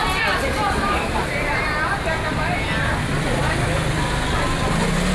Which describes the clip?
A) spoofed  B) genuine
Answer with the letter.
B